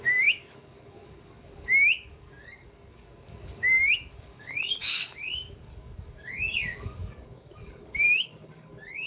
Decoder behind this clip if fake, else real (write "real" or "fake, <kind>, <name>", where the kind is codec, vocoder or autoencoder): fake, codec, DAC